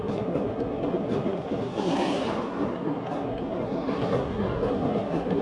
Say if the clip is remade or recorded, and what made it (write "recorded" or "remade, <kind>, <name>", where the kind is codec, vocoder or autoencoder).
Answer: remade, codec, SNAC